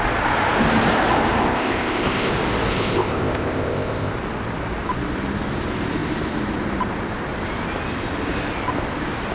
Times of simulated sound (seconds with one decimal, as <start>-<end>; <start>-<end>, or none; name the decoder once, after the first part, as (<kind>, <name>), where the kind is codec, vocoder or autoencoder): 1.4-2.3 (codec, ZipCodec); 2.7-4.1

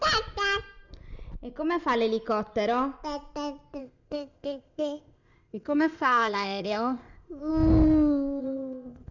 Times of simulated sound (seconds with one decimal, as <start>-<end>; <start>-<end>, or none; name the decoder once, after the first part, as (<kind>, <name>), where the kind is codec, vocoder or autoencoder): 3.8-7.5 (codec, ZipCodec); 8.4-9.1

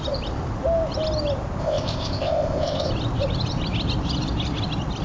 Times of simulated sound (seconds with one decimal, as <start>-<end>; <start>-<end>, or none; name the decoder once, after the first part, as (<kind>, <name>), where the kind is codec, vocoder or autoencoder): 1.6-2.9 (codec, ZipCodec)